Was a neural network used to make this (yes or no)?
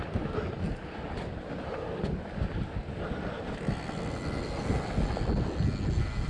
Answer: no